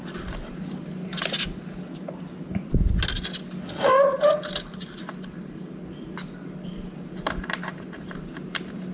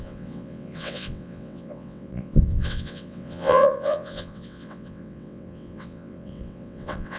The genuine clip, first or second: first